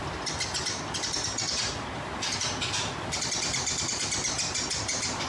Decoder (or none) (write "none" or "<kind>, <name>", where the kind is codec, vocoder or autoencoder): none